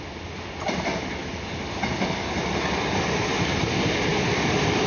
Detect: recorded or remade recorded